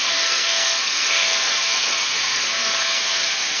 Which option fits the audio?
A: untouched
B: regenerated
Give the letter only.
B